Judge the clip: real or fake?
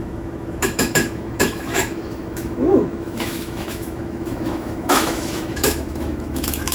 fake